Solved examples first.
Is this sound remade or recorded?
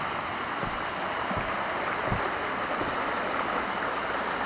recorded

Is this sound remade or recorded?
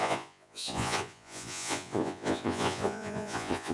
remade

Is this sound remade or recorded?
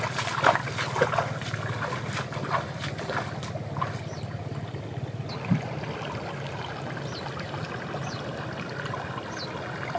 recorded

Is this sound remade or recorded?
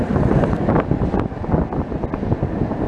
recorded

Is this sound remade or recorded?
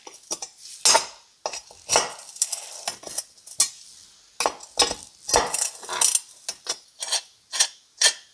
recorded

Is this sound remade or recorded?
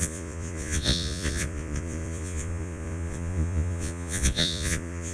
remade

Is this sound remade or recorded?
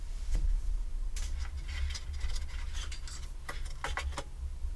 recorded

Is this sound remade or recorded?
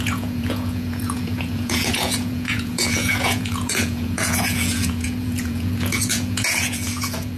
remade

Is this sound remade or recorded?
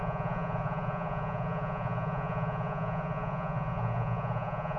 remade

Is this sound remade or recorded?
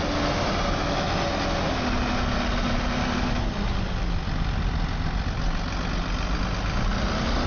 recorded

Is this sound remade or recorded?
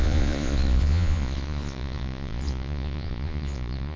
remade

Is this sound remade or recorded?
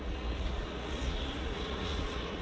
remade